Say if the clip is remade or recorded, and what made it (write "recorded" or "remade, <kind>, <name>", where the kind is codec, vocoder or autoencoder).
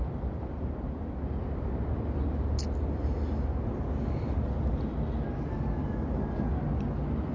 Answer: recorded